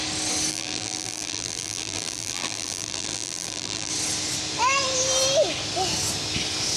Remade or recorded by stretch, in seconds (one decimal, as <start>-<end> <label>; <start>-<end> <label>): 0.0-0.5 recorded; 0.5-3.9 remade; 3.9-6.8 recorded